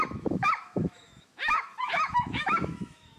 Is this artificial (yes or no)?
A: yes